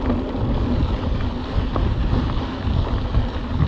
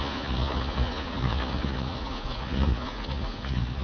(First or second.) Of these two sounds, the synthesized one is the second